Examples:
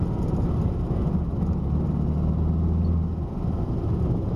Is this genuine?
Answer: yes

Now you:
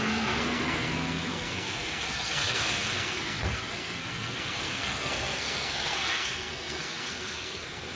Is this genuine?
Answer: no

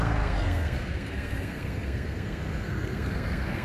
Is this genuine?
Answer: no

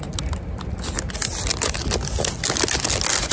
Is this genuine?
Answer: yes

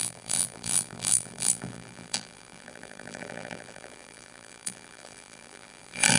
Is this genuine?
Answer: no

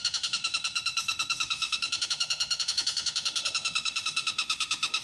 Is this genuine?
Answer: no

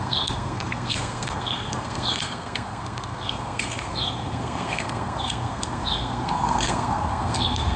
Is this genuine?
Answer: no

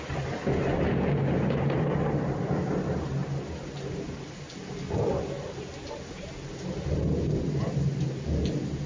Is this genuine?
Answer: yes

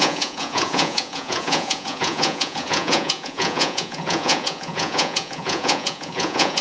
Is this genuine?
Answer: no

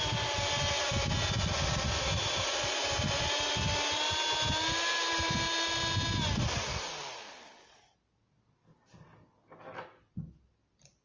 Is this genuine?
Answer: yes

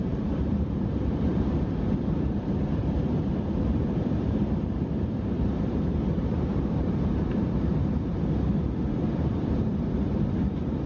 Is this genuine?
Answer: no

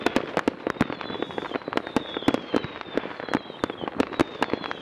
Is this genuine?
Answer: yes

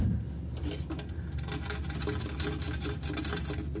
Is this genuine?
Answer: yes